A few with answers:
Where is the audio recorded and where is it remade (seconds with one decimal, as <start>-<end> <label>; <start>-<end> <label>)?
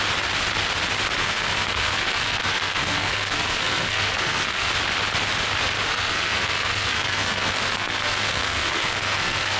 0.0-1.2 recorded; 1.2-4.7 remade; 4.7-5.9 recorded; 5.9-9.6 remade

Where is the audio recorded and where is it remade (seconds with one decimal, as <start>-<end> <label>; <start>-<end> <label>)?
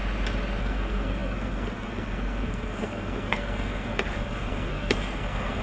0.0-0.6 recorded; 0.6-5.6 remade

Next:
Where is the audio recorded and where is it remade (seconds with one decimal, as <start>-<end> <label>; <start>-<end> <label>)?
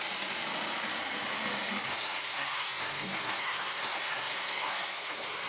0.0-1.9 recorded; 1.9-5.5 remade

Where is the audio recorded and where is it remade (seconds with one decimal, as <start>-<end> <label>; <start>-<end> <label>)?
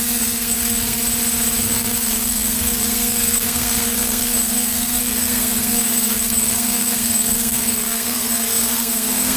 0.0-1.0 remade; 1.0-1.6 recorded; 1.6-9.4 remade